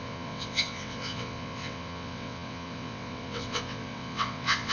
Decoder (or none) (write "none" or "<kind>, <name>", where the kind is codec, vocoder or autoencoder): vocoder, WaveNeXt